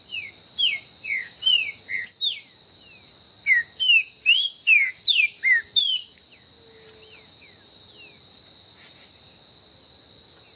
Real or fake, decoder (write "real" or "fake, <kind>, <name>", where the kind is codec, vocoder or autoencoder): real